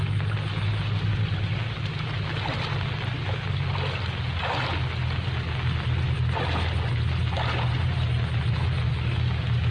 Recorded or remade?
recorded